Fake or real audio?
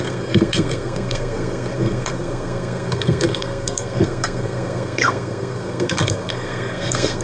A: fake